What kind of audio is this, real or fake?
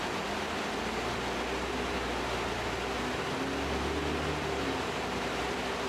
real